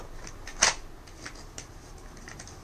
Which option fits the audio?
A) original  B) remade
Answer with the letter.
A